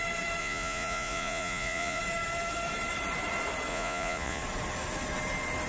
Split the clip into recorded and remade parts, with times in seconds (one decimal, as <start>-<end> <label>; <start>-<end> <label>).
0.0-0.4 recorded; 0.4-2.0 remade; 2.0-3.7 recorded; 3.7-4.4 remade; 4.4-5.7 recorded